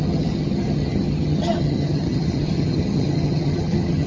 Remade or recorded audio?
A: remade